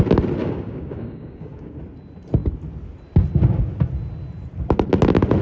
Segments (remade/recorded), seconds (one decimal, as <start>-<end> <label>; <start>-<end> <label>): 0.0-0.4 recorded; 0.4-1.8 remade; 1.8-5.4 recorded